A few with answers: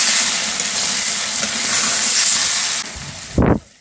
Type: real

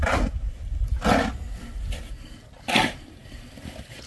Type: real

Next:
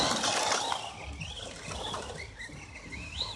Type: real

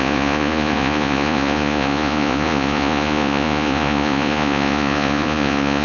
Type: fake